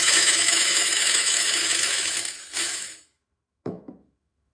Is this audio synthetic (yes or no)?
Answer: yes